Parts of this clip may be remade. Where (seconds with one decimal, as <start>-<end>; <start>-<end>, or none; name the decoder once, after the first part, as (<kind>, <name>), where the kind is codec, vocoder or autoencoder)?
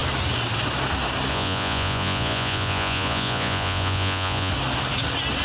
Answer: 1.3-4.5 (vocoder, Vocos)